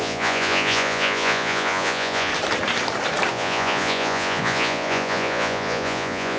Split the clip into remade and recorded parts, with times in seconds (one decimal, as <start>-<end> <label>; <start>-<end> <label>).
0.0-2.3 remade; 2.3-3.3 recorded; 3.3-6.4 remade